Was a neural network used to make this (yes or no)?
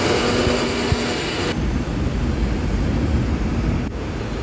no